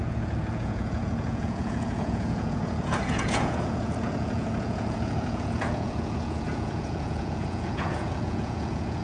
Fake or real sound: fake